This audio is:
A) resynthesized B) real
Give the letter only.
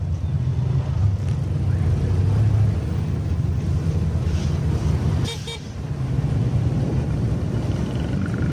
B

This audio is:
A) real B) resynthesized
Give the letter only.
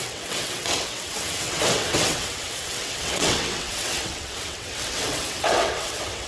B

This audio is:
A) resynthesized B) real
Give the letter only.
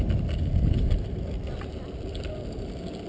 B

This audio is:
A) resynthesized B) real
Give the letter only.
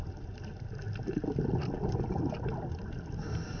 B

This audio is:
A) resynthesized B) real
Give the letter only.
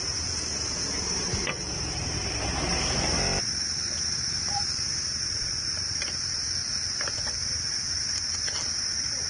A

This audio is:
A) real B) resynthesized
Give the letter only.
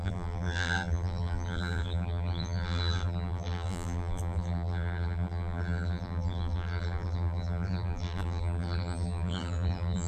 B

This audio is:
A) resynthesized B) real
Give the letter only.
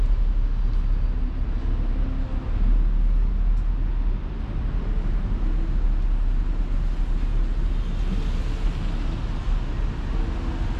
B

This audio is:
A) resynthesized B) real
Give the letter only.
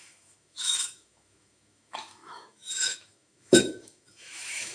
A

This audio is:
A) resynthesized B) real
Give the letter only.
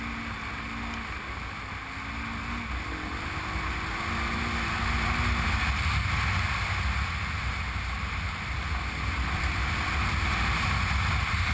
B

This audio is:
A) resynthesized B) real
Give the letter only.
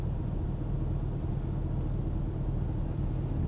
B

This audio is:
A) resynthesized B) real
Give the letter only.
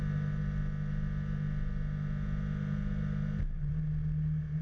B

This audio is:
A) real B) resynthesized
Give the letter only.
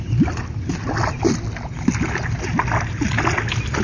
A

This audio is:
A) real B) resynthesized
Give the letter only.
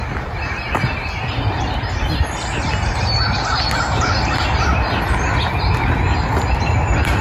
A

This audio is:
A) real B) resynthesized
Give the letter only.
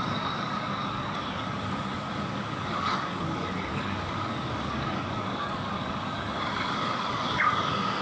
B